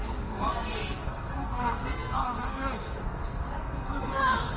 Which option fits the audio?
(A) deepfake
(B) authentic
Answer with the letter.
A